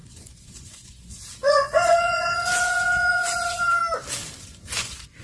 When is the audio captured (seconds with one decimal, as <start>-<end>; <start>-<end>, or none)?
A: 3.8-4.4